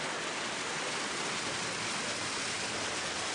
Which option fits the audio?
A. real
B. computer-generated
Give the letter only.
A